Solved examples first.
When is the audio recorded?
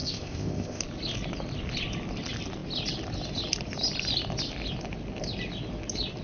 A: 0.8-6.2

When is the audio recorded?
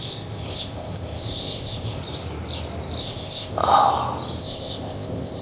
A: 2.0-3.0; 3.6-4.4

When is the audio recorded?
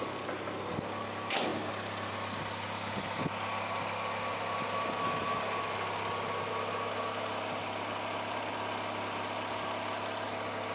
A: 0.0-10.7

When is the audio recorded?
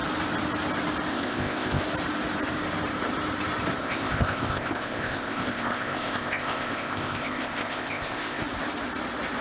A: 0.0-1.1; 1.8-3.8; 8.4-9.4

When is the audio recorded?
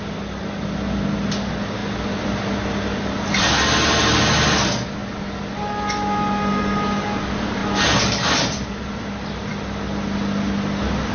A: 0.0-11.1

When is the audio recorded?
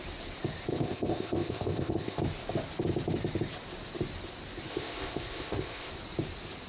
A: 0.0-0.7; 2.2-4.7; 5.9-6.7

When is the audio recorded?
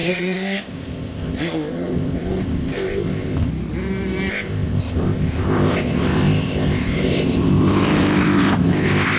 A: 3.5-4.3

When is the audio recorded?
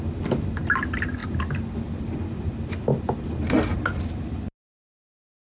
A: 0.0-5.4